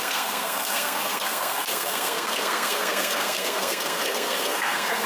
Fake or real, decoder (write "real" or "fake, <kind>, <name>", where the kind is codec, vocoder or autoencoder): fake, codec, SNAC